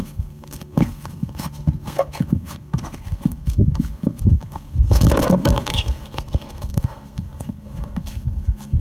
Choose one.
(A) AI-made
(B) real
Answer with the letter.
A